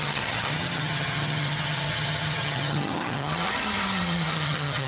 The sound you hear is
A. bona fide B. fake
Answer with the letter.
B